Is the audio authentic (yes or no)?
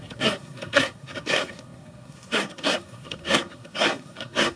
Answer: no